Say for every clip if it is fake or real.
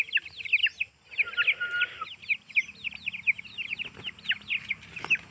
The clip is real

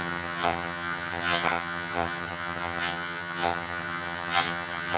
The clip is fake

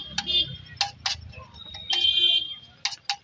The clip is real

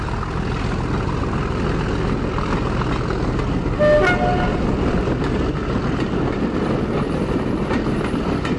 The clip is real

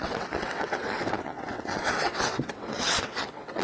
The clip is fake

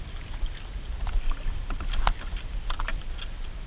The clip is real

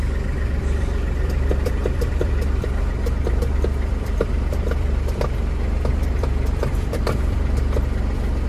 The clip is fake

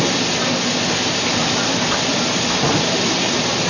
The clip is real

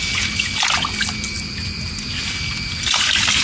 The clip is real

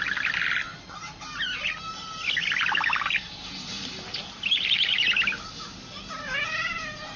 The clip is real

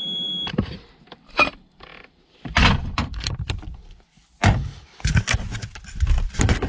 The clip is fake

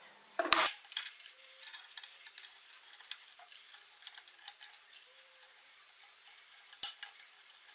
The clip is fake